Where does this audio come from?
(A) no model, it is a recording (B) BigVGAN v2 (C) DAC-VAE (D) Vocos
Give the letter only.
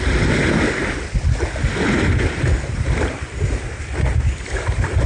A